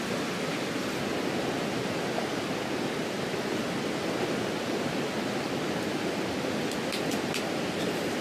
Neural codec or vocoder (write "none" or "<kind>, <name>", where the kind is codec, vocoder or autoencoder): none